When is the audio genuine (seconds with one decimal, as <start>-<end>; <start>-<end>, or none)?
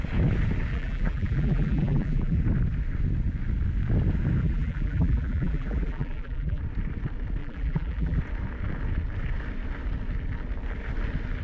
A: 0.0-0.7; 2.4-4.4; 6.6-7.4; 8.2-11.4